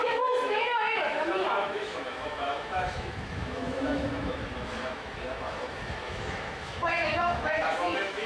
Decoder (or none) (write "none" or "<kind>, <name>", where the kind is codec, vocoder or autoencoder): autoencoder, DAC-VAE